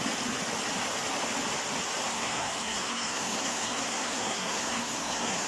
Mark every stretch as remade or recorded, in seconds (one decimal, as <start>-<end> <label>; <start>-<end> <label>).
0.0-2.1 recorded; 2.1-5.5 remade